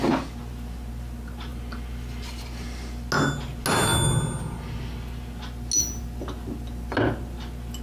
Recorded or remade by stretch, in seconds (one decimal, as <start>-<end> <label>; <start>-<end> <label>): 0.0-7.8 recorded